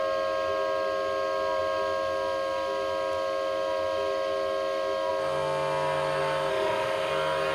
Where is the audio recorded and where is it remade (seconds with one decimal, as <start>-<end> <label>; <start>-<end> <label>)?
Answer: 0.0-6.5 recorded; 6.5-7.1 remade; 7.1-7.5 recorded